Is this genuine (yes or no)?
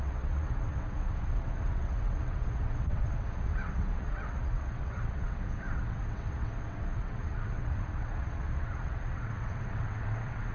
no